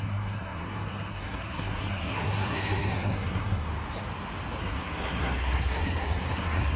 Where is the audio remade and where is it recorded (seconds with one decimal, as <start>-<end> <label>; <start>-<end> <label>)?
0.0-3.7 remade; 3.7-4.6 recorded; 4.6-6.8 remade